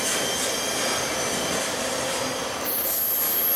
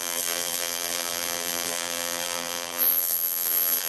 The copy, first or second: second